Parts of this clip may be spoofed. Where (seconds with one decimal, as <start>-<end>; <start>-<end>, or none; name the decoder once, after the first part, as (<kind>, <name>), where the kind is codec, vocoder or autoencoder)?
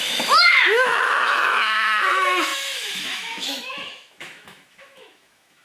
0.0-5.6 (autoencoder, DAC-VAE)